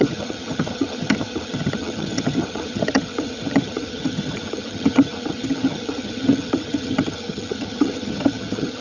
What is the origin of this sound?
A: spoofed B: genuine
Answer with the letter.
A